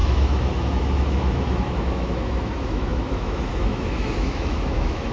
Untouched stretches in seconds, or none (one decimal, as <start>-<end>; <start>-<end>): none